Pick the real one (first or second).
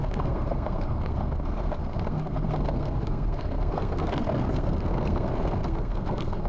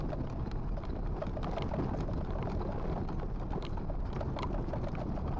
second